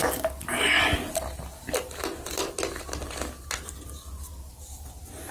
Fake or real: real